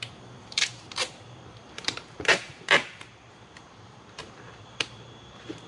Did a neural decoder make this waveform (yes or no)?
yes